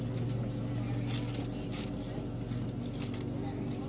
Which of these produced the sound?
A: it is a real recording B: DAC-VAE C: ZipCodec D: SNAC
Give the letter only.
A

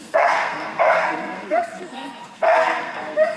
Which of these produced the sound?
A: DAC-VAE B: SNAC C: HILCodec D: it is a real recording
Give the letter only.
B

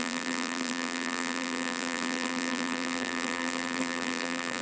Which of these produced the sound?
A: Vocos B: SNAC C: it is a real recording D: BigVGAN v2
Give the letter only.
D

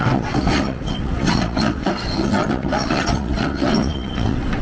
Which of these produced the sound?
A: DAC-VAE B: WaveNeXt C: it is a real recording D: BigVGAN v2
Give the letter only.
B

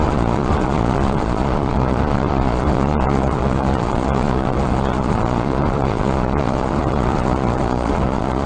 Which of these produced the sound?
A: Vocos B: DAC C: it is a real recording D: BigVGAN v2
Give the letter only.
A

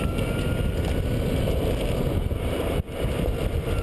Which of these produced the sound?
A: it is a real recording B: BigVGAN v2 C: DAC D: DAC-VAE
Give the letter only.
A